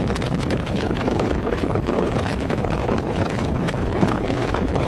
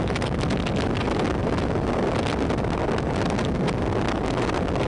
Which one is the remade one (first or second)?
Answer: first